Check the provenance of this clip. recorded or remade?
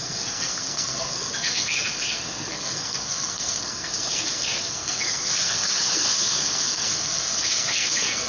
remade